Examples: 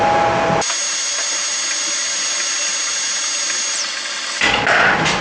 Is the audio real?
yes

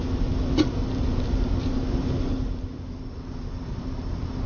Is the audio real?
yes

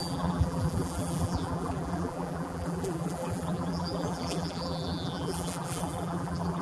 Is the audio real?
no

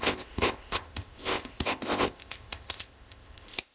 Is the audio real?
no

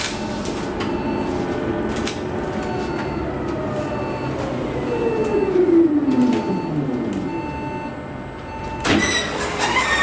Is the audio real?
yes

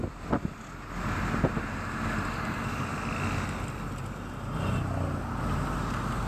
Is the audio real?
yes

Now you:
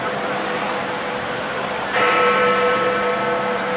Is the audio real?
no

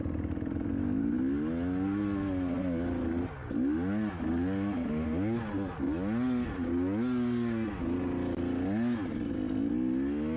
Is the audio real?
yes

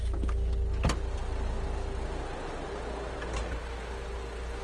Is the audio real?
yes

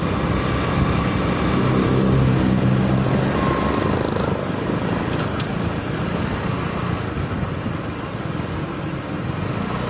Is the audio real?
yes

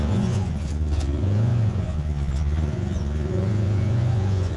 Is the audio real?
no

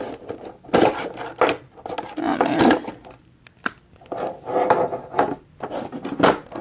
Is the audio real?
yes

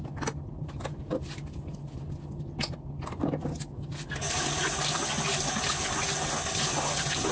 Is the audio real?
yes